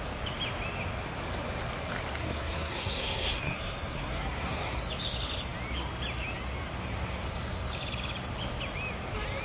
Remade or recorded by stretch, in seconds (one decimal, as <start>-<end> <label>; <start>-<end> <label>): 0.0-2.2 recorded; 2.2-4.7 remade; 4.7-9.4 recorded